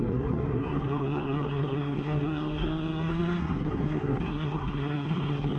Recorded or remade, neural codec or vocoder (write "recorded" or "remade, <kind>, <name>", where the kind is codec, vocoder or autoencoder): remade, codec, SNAC